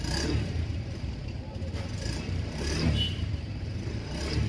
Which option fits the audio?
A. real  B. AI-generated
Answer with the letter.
B